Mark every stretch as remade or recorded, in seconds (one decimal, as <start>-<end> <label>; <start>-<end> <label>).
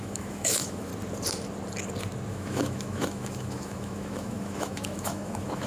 0.0-0.9 remade; 0.9-2.3 recorded; 2.3-5.7 remade